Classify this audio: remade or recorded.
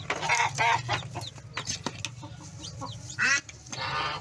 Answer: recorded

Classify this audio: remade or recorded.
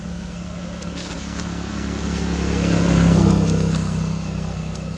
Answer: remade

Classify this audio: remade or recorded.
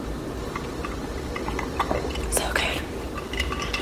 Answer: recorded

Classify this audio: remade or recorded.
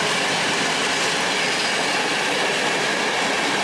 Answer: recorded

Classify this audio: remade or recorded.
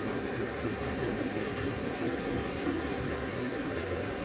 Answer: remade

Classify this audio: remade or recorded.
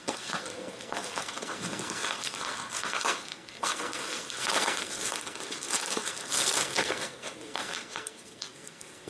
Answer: remade